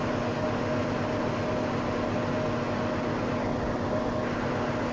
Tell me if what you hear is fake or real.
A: real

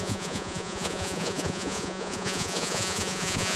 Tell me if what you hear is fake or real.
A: fake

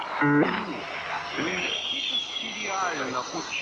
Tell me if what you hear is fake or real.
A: real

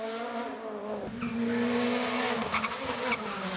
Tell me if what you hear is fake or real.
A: real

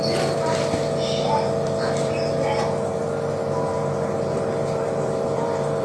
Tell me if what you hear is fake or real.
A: fake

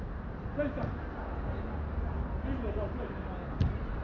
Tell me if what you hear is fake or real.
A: real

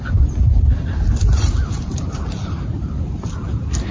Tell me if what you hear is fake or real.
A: fake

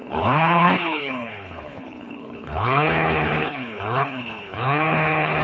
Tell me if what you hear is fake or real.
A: fake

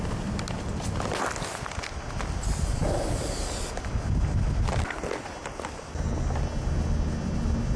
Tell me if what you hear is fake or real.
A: real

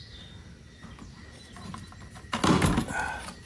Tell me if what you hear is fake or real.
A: real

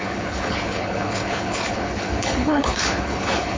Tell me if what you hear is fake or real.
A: fake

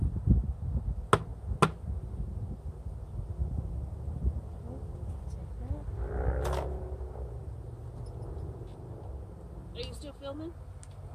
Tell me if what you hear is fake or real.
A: real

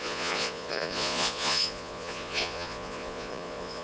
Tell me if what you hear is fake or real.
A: fake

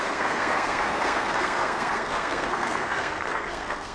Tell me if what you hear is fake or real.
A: fake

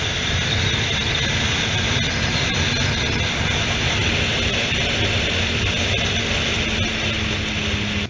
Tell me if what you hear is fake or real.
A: real